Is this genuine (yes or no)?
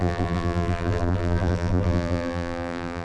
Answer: no